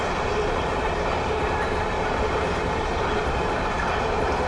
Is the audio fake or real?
fake